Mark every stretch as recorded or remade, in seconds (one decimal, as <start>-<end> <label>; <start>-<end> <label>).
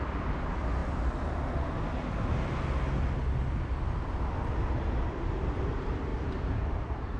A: 0.0-6.1 recorded; 6.1-7.2 remade